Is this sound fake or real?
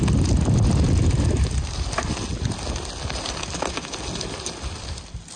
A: real